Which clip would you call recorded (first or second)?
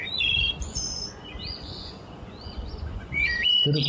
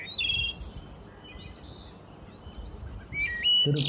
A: second